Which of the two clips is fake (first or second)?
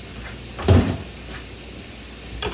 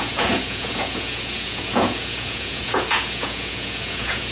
second